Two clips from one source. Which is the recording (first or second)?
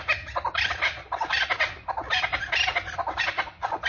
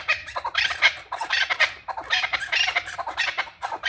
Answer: first